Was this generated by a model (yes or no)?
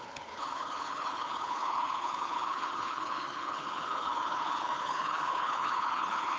yes